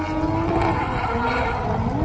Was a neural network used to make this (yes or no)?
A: no